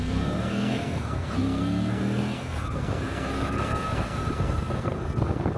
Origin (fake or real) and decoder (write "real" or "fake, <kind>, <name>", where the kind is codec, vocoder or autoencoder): fake, codec, SNAC